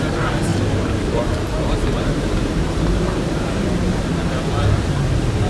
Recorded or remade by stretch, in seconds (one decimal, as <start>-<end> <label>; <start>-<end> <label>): 0.0-0.5 recorded; 0.5-3.8 remade; 3.8-5.5 recorded